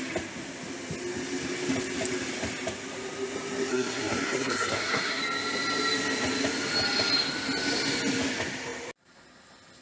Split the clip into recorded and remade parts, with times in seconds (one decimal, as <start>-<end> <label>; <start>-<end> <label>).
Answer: 0.0-3.7 recorded; 3.7-5.2 remade; 5.2-9.8 recorded